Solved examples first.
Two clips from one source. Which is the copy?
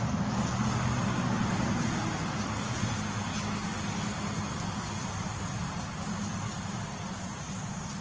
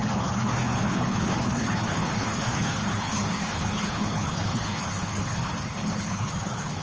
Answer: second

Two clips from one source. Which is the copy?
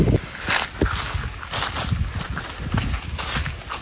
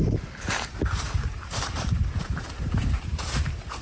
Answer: second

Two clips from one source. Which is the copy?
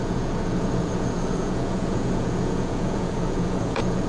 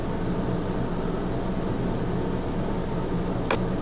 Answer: first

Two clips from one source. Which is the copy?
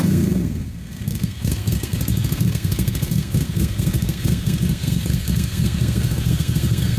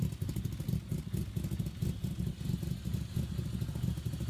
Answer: first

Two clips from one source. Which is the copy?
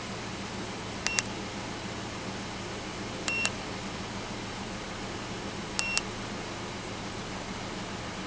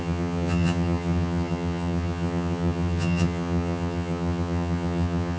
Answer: second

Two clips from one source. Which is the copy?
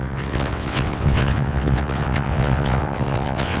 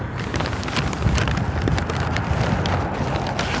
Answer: first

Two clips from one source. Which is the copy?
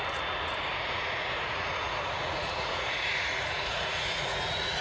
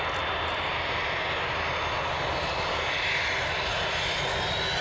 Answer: first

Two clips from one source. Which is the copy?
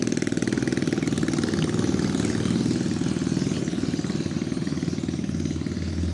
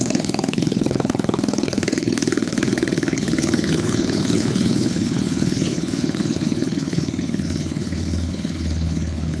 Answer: second